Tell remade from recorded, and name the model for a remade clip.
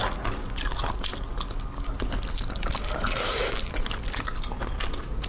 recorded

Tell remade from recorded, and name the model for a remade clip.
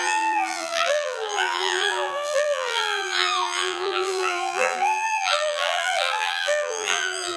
remade, vocoder, BigVGAN v2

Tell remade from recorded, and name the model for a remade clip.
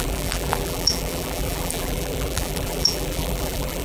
remade, vocoder, BigVGAN v2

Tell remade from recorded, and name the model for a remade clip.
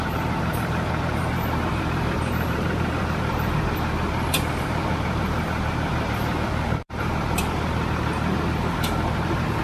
remade, vocoder, BigVGAN v2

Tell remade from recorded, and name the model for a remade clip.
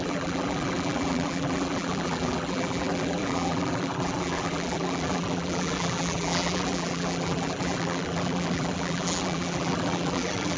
remade, vocoder, BigVGAN v2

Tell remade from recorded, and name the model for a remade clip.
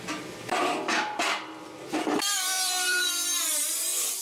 remade, vocoder, BigVGAN v2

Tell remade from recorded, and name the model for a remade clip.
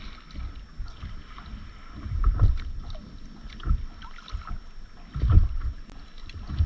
recorded